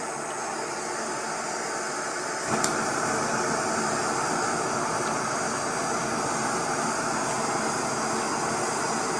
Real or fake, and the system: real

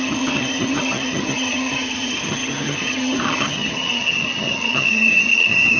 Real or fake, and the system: fake, vocoder, HiFi-GAN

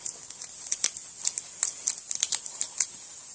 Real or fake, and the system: real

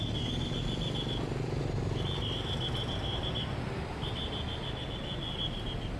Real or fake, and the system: real